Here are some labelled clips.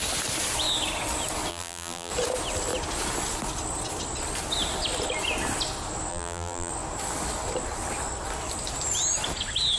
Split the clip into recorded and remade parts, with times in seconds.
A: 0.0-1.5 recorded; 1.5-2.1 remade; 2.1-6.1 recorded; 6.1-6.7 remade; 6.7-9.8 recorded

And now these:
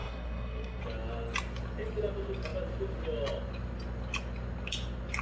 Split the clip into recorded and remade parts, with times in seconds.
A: 0.0-0.8 remade; 0.8-5.2 recorded

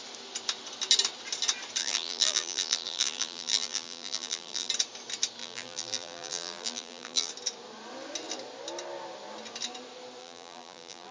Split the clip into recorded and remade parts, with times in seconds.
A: 0.0-1.8 recorded; 1.8-4.7 remade; 4.7-5.4 recorded; 5.4-7.3 remade; 7.3-10.2 recorded; 10.2-11.1 remade

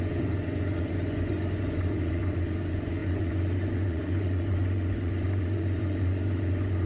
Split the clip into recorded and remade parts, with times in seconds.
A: 0.0-6.9 remade

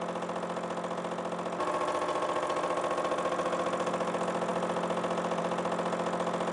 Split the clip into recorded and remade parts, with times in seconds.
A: 0.0-6.5 recorded

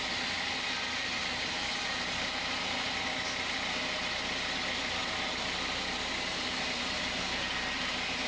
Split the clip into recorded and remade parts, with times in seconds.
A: 0.0-8.3 recorded